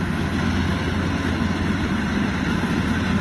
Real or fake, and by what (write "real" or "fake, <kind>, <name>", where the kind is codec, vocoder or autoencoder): real